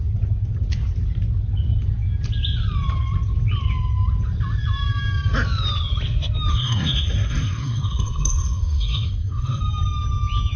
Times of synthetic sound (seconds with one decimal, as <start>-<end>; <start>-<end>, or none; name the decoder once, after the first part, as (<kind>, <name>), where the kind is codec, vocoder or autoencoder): 6.5-9.6 (codec, SNAC)